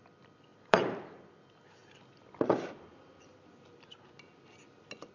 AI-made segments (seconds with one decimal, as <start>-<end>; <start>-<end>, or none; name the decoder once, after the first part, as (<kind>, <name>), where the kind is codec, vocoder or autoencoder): 0.5-1.0 (vocoder, BigVGAN v2)